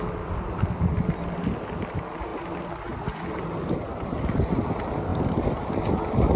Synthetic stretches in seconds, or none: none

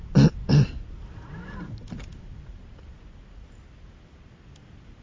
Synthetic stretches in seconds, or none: none